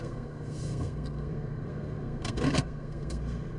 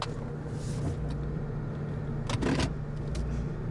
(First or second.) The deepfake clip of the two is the first